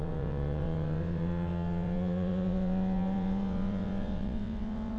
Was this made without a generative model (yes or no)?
no